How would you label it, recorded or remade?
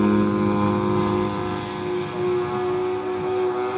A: recorded